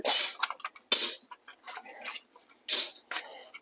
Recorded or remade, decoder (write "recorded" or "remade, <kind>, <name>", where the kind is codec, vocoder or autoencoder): recorded